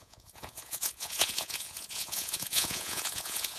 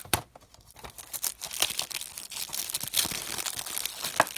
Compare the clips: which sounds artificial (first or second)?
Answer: first